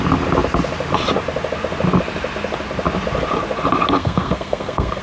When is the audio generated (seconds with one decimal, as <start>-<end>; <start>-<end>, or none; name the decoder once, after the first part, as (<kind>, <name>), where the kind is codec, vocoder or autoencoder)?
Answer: 4.0-5.0 (codec, SNAC)

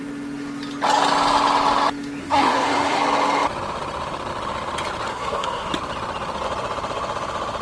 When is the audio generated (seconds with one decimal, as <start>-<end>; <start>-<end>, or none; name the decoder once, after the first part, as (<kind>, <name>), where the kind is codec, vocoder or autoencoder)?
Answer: 2.2-3.0 (codec, SNAC); 5.1-5.7

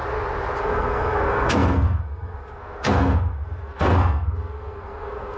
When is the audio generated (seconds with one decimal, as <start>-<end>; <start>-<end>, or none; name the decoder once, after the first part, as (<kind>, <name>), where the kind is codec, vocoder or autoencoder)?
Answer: 0.6-5.4 (codec, SNAC)

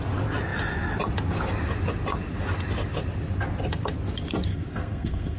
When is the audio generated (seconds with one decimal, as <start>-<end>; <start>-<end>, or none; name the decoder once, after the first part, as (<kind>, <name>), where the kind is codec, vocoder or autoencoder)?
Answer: 4.5-5.4 (codec, SNAC)